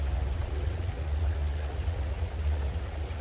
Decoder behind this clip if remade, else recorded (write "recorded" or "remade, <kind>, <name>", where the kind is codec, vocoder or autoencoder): remade, vocoder, Vocos